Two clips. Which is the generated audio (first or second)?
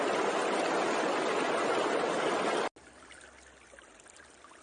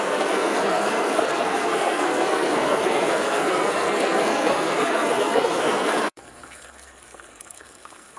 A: second